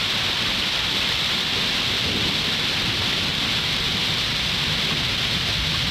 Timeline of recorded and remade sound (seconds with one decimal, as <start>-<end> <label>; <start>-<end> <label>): 0.0-2.5 remade; 2.5-3.3 recorded; 3.3-4.1 remade; 4.1-5.9 recorded

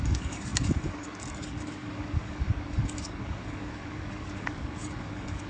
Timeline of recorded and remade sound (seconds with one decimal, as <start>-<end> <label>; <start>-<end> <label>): 0.0-5.5 remade

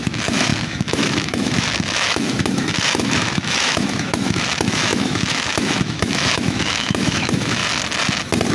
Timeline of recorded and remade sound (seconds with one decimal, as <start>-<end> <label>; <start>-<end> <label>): 0.0-7.6 remade; 7.6-8.5 recorded

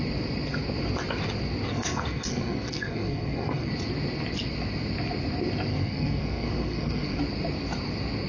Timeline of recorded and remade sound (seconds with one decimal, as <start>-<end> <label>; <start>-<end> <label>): 0.0-1.7 recorded; 1.7-3.7 remade; 3.7-5.7 recorded; 5.7-7.2 remade; 7.2-8.3 recorded

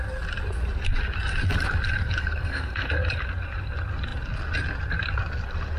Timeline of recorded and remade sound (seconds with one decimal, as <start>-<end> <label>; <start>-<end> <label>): 0.0-2.2 recorded; 2.2-2.9 remade; 2.9-5.8 recorded

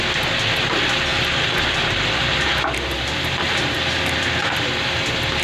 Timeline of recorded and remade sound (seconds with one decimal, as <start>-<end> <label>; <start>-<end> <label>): 0.0-1.1 recorded; 1.1-3.8 remade; 3.8-5.4 recorded

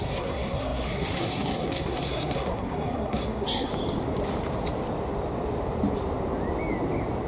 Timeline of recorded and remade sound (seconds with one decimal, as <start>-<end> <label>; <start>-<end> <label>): 0.0-3.7 remade; 3.7-7.3 recorded